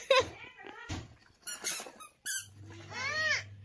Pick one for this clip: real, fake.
real